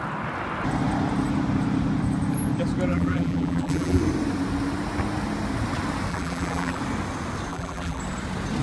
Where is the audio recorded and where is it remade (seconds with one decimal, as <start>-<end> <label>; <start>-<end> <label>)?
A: 0.0-2.9 recorded; 2.9-4.0 remade; 4.0-6.1 recorded; 6.1-6.8 remade; 6.8-7.5 recorded; 7.5-8.0 remade; 8.0-8.6 recorded